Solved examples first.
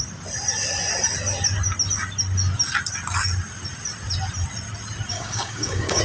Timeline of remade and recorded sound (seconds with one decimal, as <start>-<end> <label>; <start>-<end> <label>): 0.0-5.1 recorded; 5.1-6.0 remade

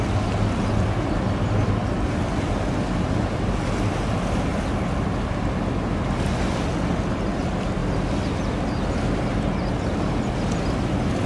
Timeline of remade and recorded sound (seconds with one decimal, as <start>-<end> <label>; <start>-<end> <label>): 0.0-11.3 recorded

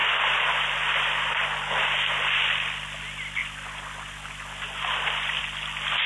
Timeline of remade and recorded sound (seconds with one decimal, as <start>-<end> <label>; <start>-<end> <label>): 0.0-6.1 recorded

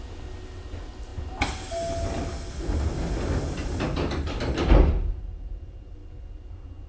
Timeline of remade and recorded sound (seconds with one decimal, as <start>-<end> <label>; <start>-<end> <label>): 0.0-6.9 recorded

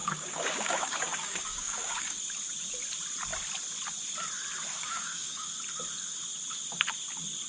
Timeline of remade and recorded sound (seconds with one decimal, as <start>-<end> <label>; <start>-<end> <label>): 0.0-2.2 remade; 2.2-4.7 recorded; 4.7-5.5 remade; 5.5-7.5 recorded

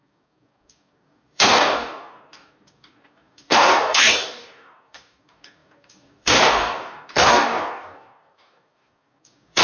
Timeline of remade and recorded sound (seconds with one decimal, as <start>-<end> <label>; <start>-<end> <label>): 0.0-9.6 remade